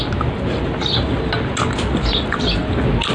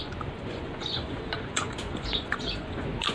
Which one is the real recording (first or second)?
first